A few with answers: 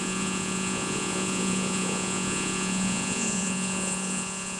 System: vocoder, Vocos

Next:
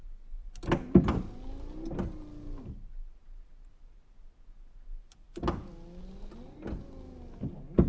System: none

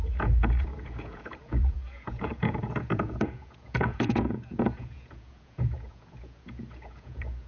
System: vocoder, Vocos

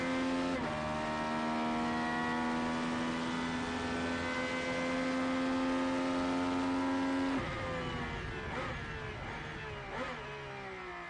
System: none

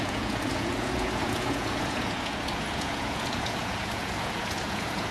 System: vocoder, Vocos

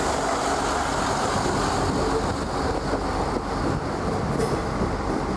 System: none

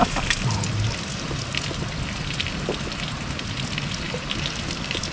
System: none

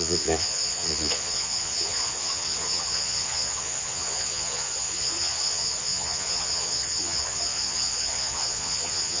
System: vocoder, Vocos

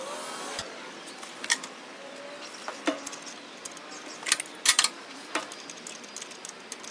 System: none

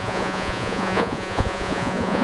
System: vocoder, Vocos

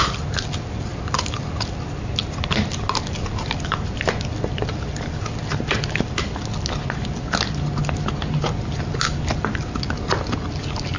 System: none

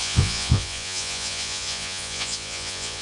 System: vocoder, Vocos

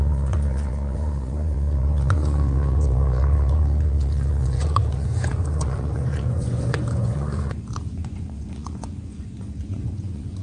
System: vocoder, Vocos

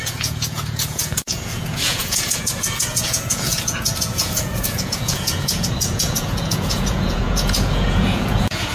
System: vocoder, Vocos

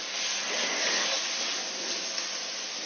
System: none